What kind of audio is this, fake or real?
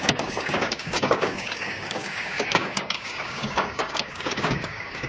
fake